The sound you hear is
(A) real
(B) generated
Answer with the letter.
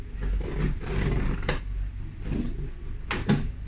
A